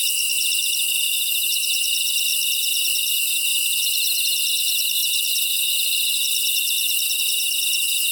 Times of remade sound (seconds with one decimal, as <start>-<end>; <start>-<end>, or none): 0.9-8.1